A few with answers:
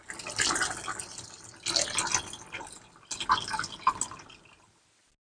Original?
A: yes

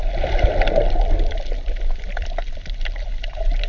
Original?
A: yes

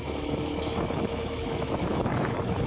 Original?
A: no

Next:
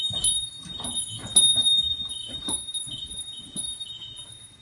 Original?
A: yes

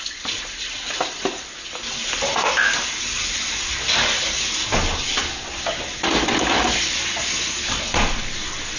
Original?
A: yes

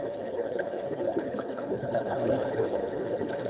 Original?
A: no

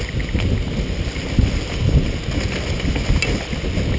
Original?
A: yes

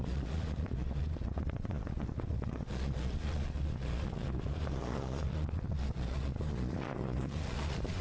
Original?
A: no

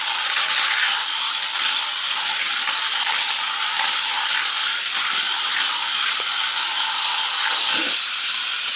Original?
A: yes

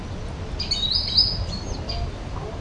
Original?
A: yes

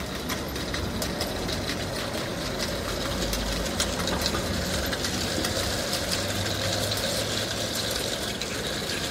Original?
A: yes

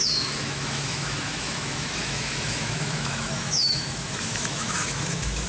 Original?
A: no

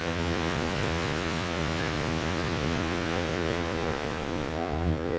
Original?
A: no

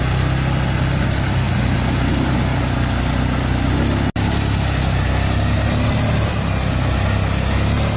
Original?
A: yes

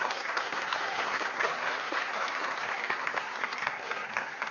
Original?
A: no